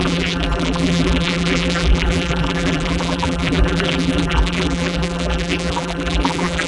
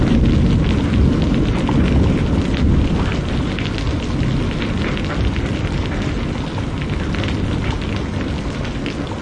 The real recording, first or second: second